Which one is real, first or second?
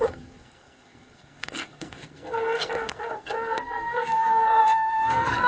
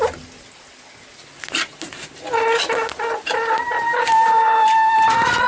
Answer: second